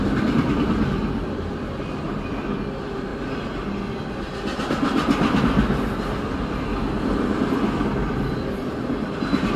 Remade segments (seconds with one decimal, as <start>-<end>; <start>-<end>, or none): none